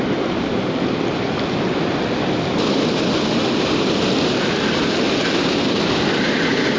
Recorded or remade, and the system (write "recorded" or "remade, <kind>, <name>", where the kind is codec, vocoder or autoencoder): recorded